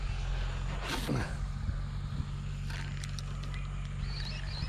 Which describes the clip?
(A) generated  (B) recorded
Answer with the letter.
B